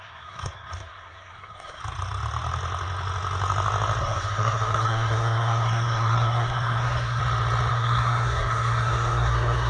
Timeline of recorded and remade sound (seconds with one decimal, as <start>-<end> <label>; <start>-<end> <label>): 0.0-1.8 remade; 1.8-4.0 recorded; 4.0-7.2 remade; 7.2-7.7 recorded; 7.7-9.7 remade